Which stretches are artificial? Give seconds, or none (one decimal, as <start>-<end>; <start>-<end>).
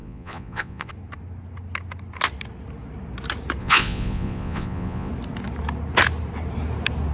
0.0-0.9; 3.6-5.1